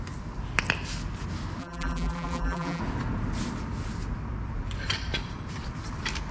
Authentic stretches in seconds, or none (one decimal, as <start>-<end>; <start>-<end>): 0.0-1.6; 2.8-6.3